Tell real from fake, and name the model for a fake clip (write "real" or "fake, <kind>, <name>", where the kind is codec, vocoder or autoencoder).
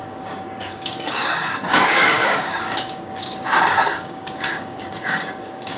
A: fake, codec, DAC